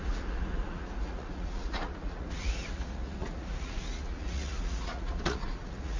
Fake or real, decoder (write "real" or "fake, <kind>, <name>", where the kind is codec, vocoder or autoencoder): fake, vocoder, Vocos